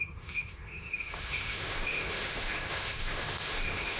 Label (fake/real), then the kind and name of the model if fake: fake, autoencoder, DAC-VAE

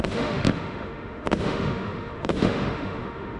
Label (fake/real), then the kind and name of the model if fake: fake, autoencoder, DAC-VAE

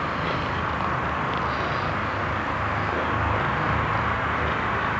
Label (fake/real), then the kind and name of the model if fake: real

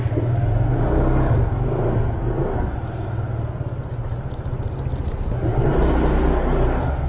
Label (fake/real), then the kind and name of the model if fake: real